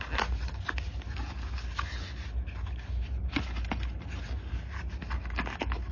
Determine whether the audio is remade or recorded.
recorded